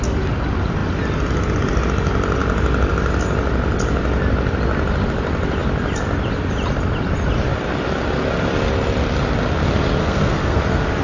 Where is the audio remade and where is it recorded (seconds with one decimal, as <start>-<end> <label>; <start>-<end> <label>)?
0.0-10.0 recorded; 10.0-10.6 remade; 10.6-11.0 recorded